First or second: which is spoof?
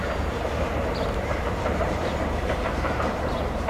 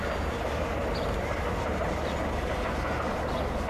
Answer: first